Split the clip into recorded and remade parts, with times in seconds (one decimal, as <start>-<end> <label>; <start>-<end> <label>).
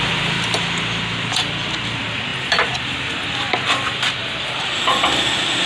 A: 0.0-4.2 recorded; 4.2-4.7 remade; 4.7-5.7 recorded